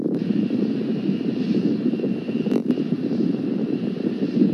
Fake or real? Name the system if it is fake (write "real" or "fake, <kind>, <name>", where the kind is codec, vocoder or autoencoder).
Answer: fake, vocoder, BigVGAN v2